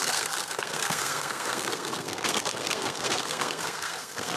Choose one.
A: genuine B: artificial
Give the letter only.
B